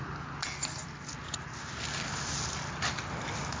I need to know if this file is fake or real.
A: real